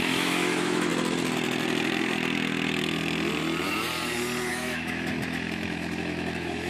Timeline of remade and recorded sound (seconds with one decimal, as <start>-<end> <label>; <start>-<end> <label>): 0.0-0.9 remade; 0.9-4.5 recorded; 4.5-6.7 remade